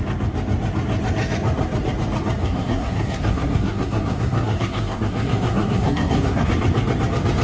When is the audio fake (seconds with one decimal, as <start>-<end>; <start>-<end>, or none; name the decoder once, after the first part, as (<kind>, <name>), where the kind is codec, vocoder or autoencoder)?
2.4-6.5 (codec, SNAC)